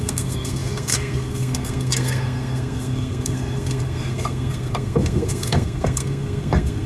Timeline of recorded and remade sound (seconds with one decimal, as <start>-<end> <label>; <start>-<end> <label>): 0.0-6.9 remade